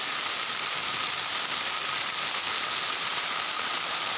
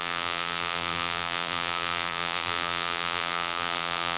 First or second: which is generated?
second